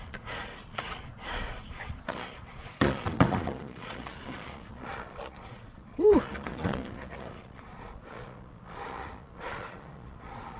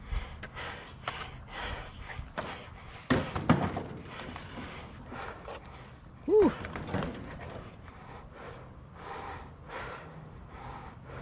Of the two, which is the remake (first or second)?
first